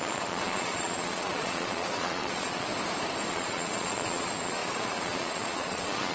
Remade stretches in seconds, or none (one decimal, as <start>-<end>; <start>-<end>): 0.0-2.7; 3.3-6.1